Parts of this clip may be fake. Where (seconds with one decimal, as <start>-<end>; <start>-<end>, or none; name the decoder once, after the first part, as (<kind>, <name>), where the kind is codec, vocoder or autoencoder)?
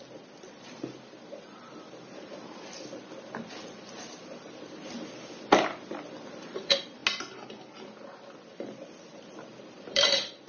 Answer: 0.0-7.0 (vocoder, BigVGAN v2); 7.8-10.5